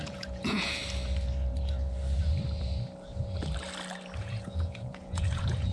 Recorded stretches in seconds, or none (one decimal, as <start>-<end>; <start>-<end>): 0.8-4.2